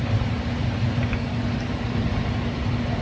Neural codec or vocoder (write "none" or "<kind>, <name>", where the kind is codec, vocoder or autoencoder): none